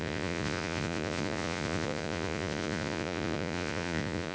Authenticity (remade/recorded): remade